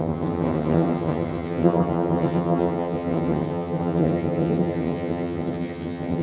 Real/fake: fake